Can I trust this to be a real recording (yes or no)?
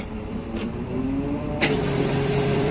no